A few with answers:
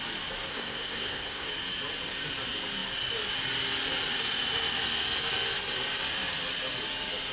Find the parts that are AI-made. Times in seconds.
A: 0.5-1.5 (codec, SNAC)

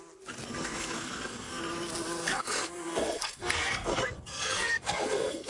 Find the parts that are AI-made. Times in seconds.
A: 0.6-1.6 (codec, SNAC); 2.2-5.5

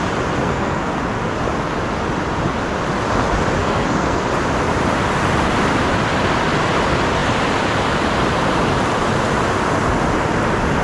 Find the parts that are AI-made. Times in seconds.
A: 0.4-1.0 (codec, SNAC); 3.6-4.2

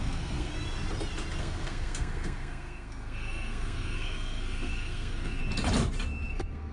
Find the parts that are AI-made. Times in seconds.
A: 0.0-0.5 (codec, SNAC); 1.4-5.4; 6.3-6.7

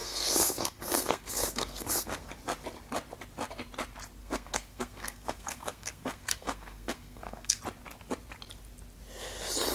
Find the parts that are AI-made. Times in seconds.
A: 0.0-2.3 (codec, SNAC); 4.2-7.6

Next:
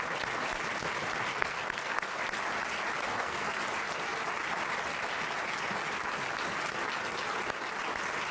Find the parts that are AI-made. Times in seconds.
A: 1.3-2.2 (codec, SNAC); 3.1-3.6

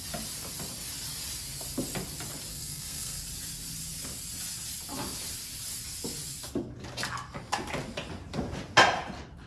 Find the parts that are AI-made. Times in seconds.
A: 2.5-3.2 (codec, SNAC)

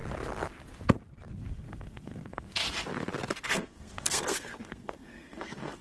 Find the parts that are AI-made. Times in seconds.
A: 1.5-2.6 (codec, SNAC); 3.5-5.8